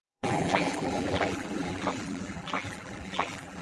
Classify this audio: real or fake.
fake